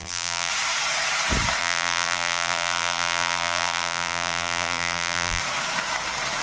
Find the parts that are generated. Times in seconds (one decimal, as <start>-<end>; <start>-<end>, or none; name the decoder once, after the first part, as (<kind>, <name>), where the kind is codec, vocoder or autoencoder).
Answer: 0.0-0.5 (vocoder, BigVGAN v2); 1.6-5.4